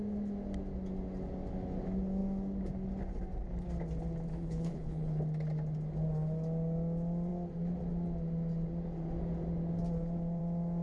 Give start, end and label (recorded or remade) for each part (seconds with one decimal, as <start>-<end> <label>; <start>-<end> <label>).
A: 0.0-4.3 recorded; 4.3-5.2 remade; 5.2-10.8 recorded

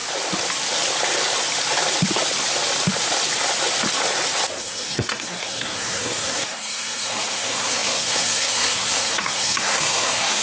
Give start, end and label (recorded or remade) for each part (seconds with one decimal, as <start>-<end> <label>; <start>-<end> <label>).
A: 0.0-4.6 recorded; 4.6-10.4 remade